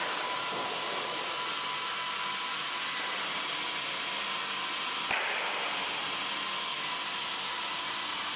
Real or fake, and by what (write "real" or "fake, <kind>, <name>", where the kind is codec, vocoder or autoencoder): real